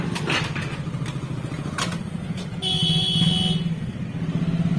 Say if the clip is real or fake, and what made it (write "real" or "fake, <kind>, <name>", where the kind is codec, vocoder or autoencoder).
real